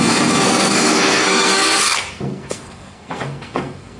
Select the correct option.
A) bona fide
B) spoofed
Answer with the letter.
B